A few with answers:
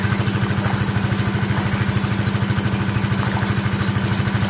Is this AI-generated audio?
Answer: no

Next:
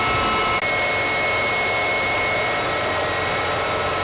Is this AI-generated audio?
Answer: no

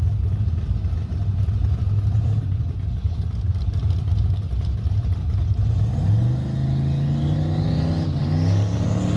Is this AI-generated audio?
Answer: no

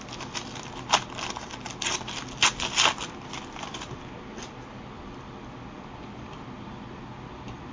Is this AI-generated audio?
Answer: no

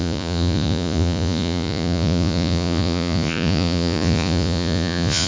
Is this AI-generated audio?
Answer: yes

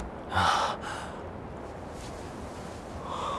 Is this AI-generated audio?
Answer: no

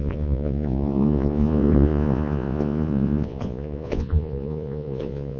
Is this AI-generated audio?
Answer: yes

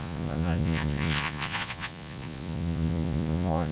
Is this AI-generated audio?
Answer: yes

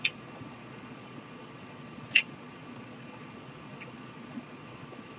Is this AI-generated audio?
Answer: yes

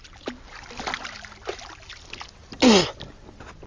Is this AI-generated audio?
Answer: no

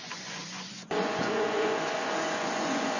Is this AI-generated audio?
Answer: yes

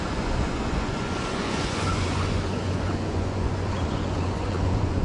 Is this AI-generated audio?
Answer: yes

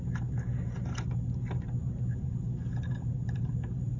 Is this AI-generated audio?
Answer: no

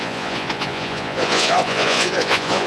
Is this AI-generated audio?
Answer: yes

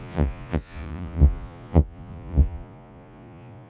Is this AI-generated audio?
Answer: yes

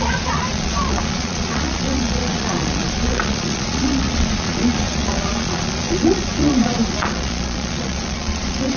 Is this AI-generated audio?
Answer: yes